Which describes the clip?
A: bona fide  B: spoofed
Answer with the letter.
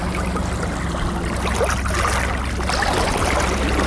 A